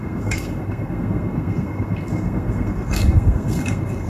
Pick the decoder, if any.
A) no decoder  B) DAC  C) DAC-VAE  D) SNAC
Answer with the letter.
D